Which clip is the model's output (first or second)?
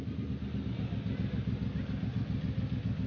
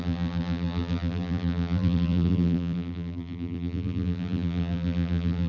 second